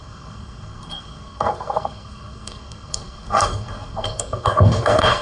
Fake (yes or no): yes